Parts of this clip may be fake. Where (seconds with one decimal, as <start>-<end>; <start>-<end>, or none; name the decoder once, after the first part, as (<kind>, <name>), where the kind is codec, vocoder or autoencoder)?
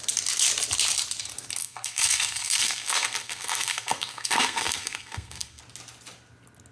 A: 1.6-5.6 (codec, SNAC)